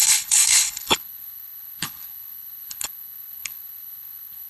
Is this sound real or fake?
fake